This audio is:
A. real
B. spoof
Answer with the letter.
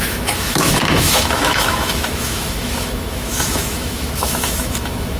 B